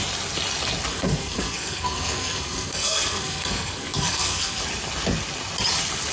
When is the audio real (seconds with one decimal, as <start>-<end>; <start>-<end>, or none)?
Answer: 0.0-0.9; 4.6-6.1